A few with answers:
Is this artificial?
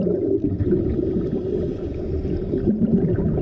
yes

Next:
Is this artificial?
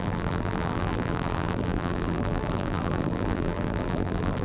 yes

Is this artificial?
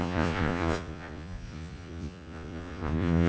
yes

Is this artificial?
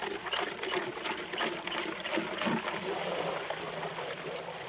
no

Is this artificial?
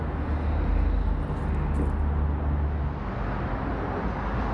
no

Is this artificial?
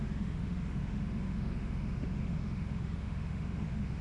yes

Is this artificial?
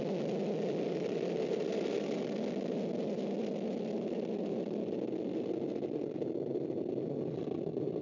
no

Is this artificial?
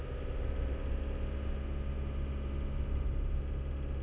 no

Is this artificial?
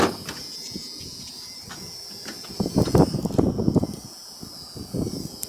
yes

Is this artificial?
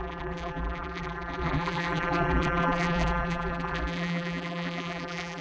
yes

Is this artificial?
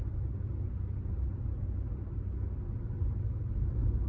no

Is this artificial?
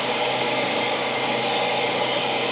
yes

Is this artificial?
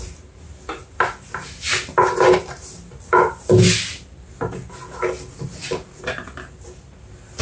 no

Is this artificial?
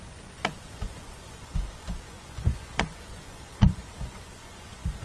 yes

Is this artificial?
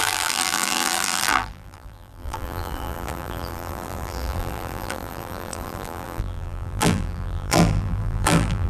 yes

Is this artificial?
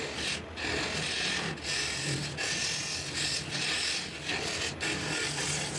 no